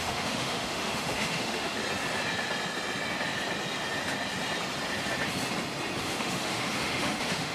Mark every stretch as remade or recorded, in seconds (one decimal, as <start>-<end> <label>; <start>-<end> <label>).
0.0-1.8 remade; 1.8-6.0 recorded; 6.0-7.5 remade